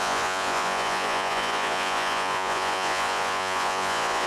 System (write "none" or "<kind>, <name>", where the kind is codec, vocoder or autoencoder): vocoder, Vocos